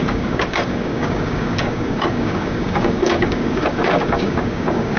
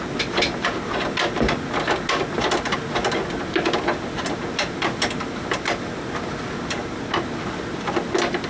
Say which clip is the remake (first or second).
first